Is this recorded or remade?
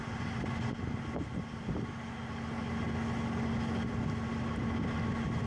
recorded